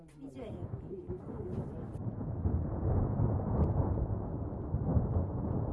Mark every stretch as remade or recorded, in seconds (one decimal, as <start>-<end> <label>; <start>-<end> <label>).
0.0-0.4 recorded; 0.4-1.0 remade; 1.0-2.0 recorded; 2.0-4.5 remade; 4.5-4.9 recorded; 4.9-5.7 remade